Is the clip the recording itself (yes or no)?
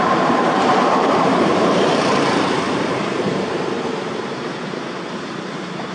no